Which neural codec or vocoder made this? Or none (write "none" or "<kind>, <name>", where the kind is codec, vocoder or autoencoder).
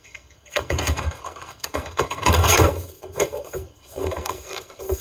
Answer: codec, SNAC